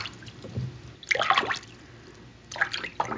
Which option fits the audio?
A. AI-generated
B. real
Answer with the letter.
B